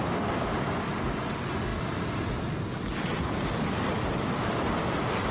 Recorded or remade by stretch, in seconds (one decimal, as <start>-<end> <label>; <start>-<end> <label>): 0.0-5.3 recorded